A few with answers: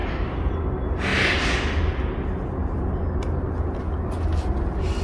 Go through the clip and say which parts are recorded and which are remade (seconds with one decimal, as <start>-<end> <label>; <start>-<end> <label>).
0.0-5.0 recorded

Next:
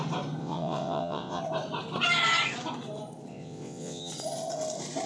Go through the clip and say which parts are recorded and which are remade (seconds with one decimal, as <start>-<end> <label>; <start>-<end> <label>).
0.0-0.4 recorded; 0.4-1.4 remade; 1.4-3.3 recorded; 3.3-4.1 remade; 4.1-5.1 recorded

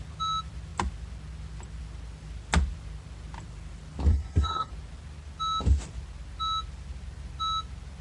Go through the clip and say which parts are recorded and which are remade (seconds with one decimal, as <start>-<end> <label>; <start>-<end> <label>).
0.0-4.1 recorded; 4.1-4.7 remade; 4.7-8.0 recorded